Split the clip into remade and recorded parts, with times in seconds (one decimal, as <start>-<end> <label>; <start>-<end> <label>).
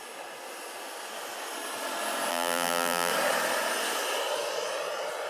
0.0-2.3 recorded; 2.3-3.1 remade; 3.1-5.3 recorded